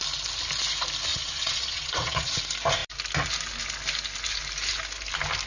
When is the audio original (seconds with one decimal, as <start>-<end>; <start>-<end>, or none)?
0.0-1.1; 2.4-5.5